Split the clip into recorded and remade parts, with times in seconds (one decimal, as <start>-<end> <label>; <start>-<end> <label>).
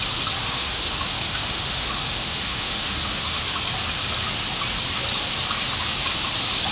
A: 0.0-0.4 recorded; 0.4-3.4 remade; 3.4-6.7 recorded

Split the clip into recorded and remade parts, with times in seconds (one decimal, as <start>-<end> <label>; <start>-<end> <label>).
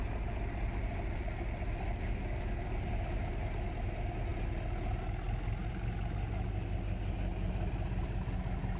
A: 0.0-8.8 recorded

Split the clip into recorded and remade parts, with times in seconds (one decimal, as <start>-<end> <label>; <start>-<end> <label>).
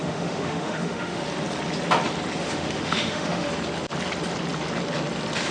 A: 0.0-1.2 remade; 1.2-2.4 recorded; 2.4-3.5 remade; 3.5-5.5 recorded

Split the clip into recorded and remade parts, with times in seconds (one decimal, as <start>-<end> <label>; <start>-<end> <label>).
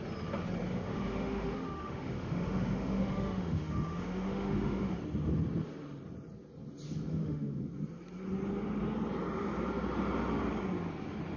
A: 0.0-0.7 recorded; 0.7-5.0 remade; 5.0-7.1 recorded; 7.1-7.6 remade; 7.6-11.4 recorded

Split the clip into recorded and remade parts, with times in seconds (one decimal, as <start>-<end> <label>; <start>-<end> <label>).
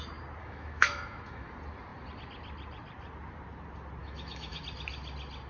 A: 0.0-0.4 recorded; 0.4-1.5 remade; 1.5-4.0 recorded; 4.0-4.6 remade; 4.6-5.5 recorded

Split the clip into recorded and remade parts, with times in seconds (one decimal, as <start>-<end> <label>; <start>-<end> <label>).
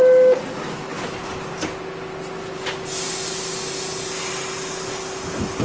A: 0.0-5.6 recorded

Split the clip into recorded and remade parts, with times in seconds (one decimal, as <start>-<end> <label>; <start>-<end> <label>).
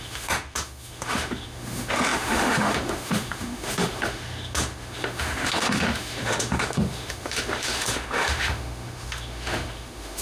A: 0.0-10.2 remade